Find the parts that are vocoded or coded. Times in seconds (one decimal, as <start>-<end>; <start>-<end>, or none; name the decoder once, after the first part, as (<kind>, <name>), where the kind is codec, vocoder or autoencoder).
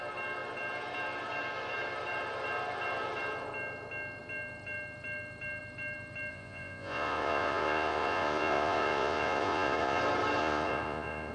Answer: 6.3-10.0 (vocoder, Vocos); 10.4-11.3